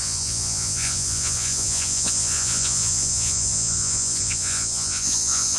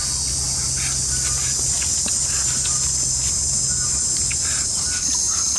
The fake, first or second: first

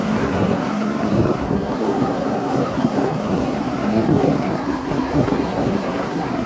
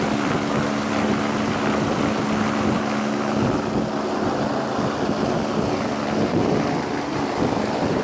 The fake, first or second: first